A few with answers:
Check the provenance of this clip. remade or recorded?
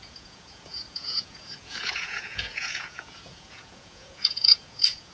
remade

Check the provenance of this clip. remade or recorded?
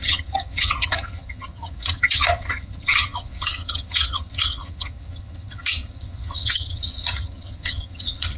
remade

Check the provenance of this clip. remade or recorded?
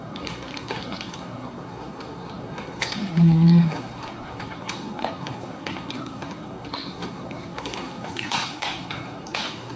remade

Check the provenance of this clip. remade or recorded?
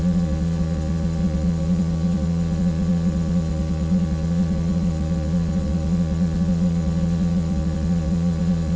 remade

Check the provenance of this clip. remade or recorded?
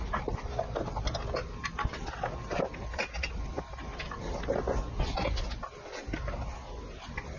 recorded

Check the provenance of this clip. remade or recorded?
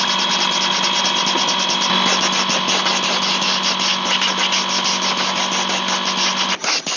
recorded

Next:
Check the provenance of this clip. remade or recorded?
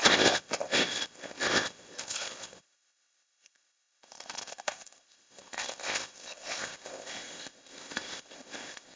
remade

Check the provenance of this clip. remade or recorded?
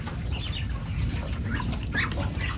recorded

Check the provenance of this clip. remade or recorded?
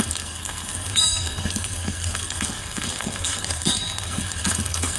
remade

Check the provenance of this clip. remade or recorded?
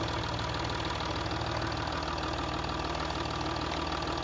recorded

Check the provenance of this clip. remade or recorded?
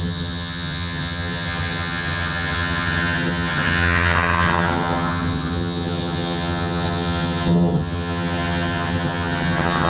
remade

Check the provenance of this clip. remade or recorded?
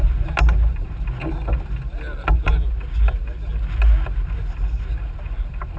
recorded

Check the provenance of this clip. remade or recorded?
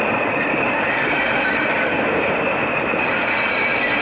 recorded